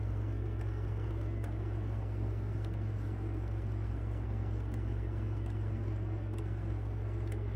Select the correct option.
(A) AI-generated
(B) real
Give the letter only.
A